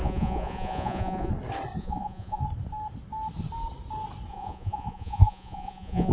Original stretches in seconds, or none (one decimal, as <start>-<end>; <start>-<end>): 1.3-1.8; 2.4-4.3